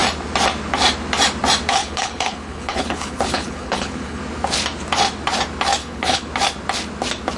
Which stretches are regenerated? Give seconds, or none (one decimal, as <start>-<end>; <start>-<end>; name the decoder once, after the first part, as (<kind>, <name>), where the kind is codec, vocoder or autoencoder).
1.8-4.2 (codec, HILCodec); 5.8-6.3